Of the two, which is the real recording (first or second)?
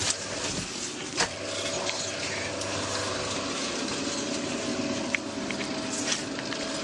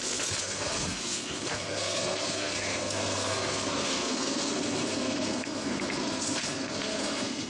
first